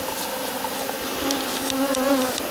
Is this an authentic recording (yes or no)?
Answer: yes